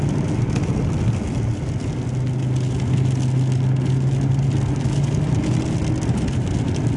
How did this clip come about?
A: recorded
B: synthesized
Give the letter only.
A